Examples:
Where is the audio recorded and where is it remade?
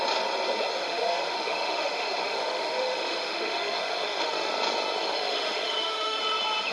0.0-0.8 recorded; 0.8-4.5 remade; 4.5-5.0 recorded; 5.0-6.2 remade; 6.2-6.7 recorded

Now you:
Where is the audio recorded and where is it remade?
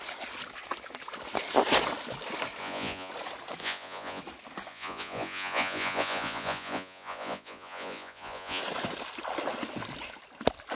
0.0-2.6 recorded; 2.6-3.1 remade; 3.1-3.6 recorded; 3.6-4.2 remade; 4.2-4.7 recorded; 4.7-8.6 remade; 8.6-10.7 recorded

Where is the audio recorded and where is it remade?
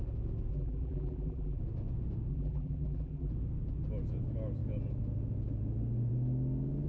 0.0-0.5 recorded; 0.5-1.6 remade; 1.6-2.3 recorded; 2.3-3.3 remade; 3.3-6.9 recorded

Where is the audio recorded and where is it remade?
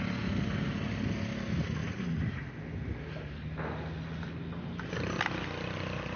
0.0-6.2 recorded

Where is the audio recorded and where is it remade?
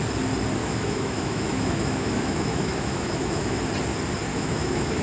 0.0-0.6 recorded; 0.6-3.6 remade; 3.6-4.3 recorded; 4.3-5.0 remade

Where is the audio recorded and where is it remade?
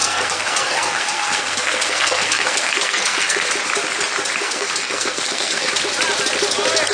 0.0-3.5 remade; 3.5-4.4 recorded; 4.4-5.7 remade; 5.7-6.9 recorded